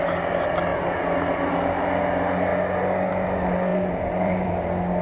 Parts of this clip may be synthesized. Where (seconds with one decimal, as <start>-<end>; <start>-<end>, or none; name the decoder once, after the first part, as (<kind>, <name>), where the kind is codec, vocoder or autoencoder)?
3.7-4.5 (vocoder, BigVGAN v2)